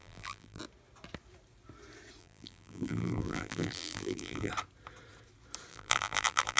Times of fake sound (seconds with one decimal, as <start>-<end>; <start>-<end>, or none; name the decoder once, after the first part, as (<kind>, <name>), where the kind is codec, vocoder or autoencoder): 0.0-0.6 (vocoder, BigVGAN v2); 2.2-4.5; 5.7-6.6